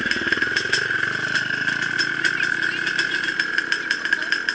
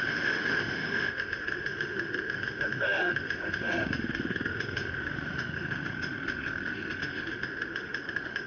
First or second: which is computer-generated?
second